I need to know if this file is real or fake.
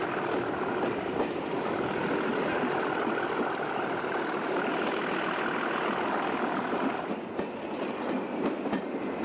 real